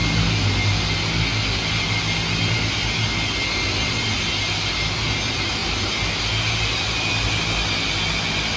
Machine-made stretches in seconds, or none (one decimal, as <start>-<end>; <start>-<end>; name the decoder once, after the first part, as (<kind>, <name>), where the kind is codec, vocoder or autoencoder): none